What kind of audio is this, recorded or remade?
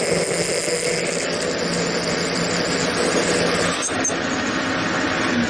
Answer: recorded